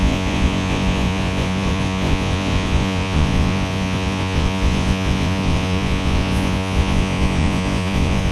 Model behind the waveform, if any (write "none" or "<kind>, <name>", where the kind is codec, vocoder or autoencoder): vocoder, Vocos